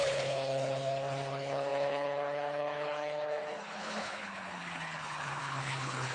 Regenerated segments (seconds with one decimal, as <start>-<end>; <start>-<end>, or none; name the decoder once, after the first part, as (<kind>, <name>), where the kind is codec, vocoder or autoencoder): 0.0-6.1 (codec, HILCodec)